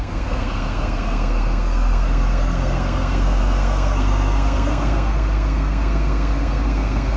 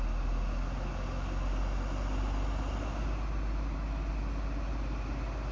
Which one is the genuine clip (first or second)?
second